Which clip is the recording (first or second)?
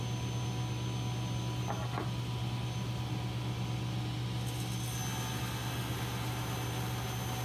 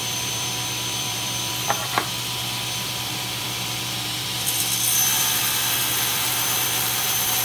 first